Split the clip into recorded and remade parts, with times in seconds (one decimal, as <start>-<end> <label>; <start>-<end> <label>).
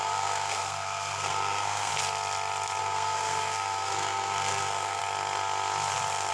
0.0-1.9 remade; 1.9-2.8 recorded; 2.8-5.0 remade; 5.0-6.3 recorded